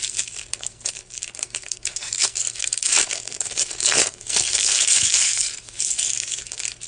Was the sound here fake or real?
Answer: fake